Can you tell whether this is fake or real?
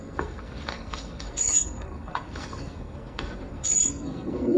fake